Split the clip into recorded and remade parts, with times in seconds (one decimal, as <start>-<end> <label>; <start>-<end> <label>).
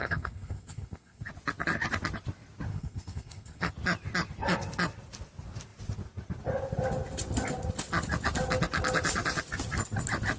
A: 0.0-1.3 remade; 1.3-2.7 recorded; 2.7-3.7 remade; 3.7-10.4 recorded